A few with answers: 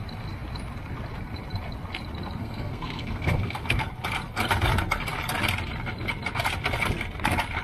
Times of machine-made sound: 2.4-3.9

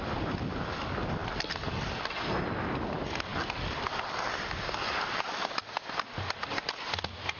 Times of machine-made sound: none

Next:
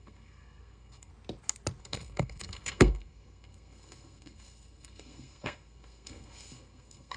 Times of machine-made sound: 0.0-1.1; 1.8-7.2

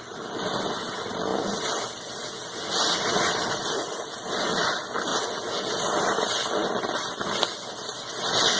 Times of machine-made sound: none